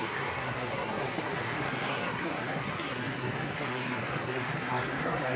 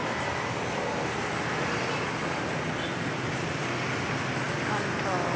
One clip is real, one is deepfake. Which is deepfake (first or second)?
first